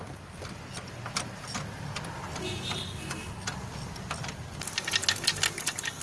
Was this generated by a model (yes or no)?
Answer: no